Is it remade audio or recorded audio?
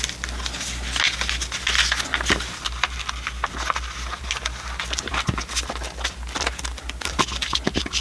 recorded